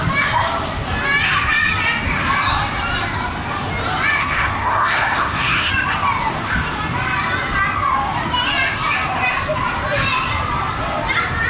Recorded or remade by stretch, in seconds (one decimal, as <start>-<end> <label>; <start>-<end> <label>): 0.0-4.2 recorded; 4.2-5.7 remade; 5.7-11.5 recorded